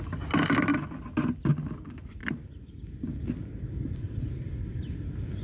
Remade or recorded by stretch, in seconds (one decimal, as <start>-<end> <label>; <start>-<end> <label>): 0.0-5.4 recorded